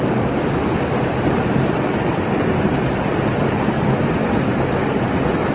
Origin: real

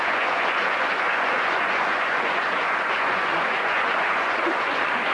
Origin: fake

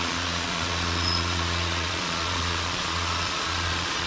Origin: fake